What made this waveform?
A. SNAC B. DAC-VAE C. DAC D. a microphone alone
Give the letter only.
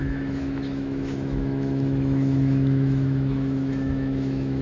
B